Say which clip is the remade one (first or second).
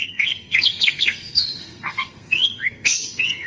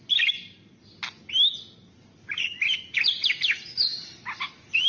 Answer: first